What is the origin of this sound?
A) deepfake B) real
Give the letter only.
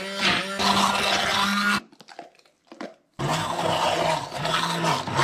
B